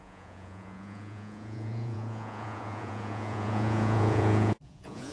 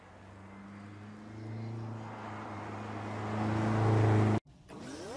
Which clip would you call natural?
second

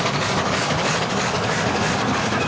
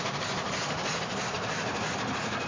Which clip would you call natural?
second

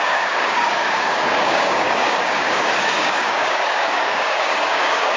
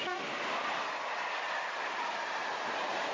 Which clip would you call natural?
second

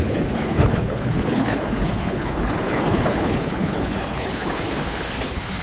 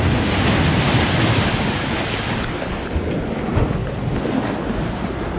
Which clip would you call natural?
second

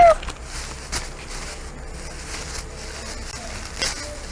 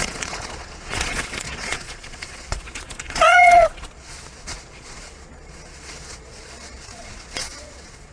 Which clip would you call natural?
first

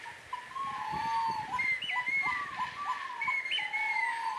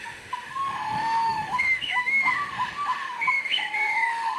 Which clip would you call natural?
first